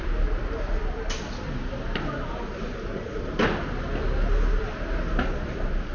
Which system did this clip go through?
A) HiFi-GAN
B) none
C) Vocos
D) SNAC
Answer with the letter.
B